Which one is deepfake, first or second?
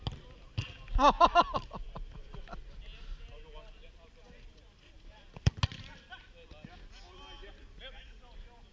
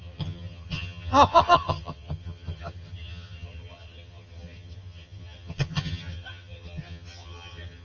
second